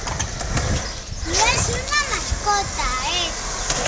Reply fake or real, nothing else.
real